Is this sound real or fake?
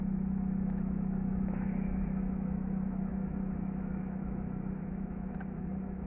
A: fake